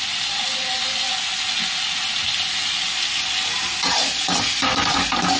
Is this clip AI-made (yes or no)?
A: no